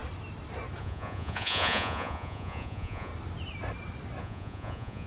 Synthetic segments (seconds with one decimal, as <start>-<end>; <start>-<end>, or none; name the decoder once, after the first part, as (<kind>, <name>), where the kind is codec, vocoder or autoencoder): 0.8-3.1 (vocoder, Vocos); 4.2-5.1